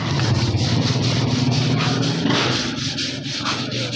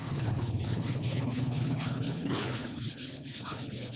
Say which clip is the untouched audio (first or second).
first